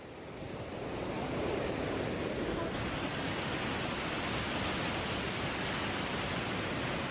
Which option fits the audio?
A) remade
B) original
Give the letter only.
B